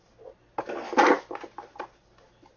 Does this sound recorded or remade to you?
recorded